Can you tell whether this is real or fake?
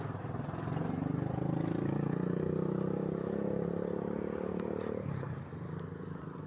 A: real